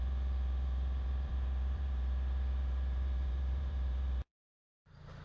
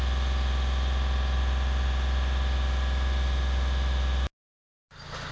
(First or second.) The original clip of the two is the second